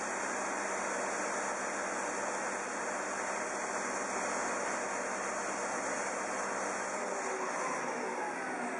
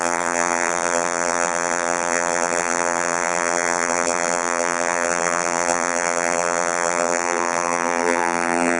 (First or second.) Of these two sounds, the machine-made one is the second